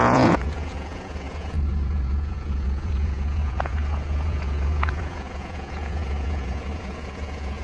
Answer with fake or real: fake